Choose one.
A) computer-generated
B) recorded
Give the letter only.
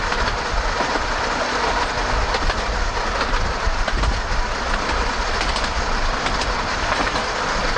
B